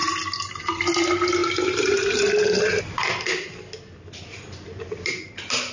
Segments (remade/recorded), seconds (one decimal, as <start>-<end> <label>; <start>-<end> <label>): 0.0-0.6 recorded; 0.6-5.7 remade